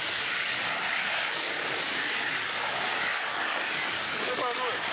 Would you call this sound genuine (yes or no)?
no